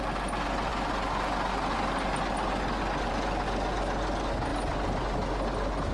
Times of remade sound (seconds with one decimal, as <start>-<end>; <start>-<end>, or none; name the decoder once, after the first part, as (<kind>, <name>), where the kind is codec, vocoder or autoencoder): none